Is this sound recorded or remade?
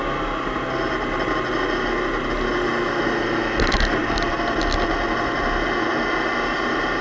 recorded